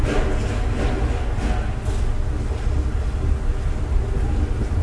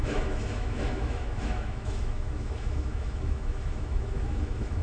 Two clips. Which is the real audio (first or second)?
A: first